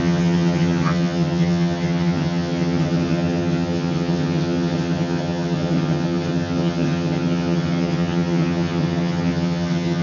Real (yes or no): no